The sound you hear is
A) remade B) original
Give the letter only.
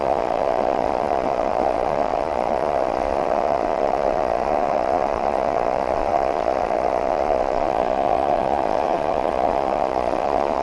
A